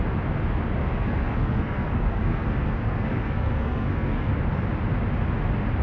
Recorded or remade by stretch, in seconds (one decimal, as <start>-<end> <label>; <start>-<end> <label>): 0.0-0.8 recorded; 0.8-4.3 remade; 4.3-5.8 recorded